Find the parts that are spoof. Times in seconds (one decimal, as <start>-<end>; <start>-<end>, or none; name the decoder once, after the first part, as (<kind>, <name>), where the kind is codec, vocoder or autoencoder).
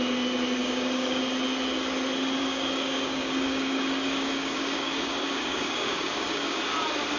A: 0.6-1.2 (codec, DAC); 2.4-6.6